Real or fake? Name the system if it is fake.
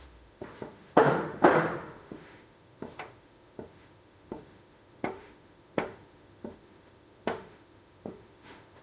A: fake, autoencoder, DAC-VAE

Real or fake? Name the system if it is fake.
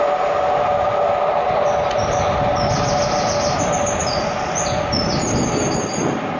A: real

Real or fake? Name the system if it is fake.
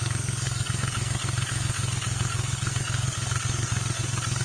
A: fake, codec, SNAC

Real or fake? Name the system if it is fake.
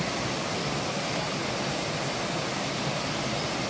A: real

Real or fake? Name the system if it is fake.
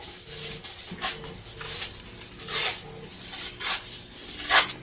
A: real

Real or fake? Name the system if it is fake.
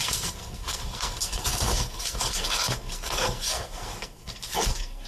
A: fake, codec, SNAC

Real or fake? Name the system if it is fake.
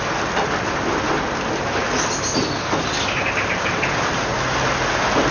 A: real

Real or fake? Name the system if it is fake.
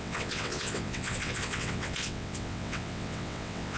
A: fake, vocoder, WaveNeXt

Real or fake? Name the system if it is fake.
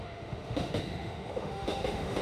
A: fake, autoencoder, DAC-VAE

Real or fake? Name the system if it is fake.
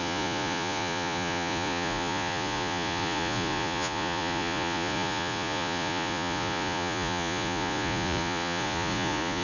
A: fake, vocoder, Vocos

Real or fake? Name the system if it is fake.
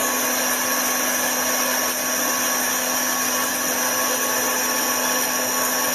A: real